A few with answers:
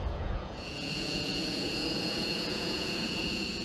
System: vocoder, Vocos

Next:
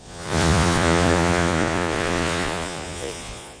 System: vocoder, Vocos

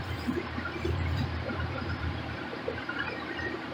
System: vocoder, BigVGAN v2